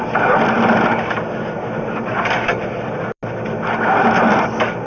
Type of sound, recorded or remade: recorded